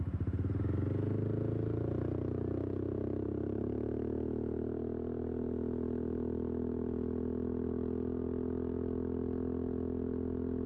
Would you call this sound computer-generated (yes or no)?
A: no